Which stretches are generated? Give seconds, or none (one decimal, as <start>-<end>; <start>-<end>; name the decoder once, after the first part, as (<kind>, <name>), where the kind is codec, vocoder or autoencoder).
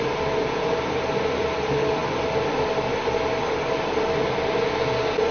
none